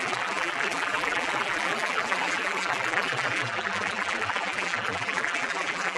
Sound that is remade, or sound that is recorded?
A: remade